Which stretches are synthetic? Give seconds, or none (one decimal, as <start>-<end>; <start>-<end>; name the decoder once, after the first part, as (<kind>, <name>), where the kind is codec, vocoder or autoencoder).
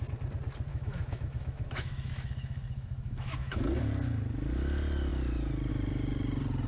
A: 0.7-3.6 (autoencoder, DAC-VAE)